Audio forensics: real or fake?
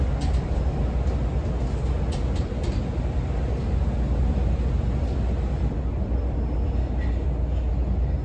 real